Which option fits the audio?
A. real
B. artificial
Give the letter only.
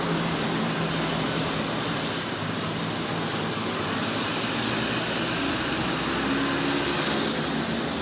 A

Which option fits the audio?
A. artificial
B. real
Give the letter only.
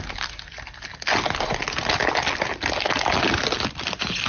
B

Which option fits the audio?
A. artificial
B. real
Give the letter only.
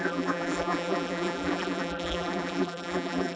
A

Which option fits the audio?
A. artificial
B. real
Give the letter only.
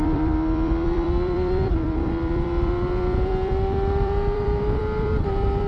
A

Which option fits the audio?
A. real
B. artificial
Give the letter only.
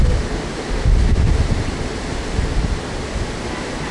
A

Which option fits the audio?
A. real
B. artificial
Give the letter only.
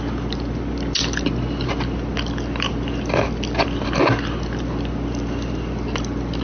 A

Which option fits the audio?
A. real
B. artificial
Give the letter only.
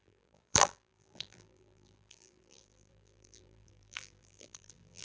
B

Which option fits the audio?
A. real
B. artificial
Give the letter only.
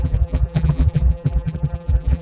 B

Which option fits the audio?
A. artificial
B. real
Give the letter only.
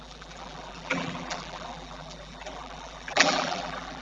A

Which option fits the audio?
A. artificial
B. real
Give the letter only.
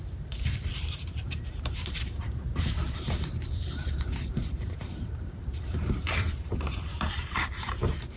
A